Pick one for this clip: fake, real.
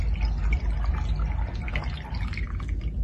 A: real